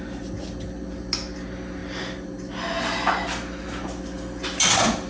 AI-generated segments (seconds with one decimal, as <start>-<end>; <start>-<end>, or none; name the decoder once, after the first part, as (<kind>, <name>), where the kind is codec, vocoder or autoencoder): none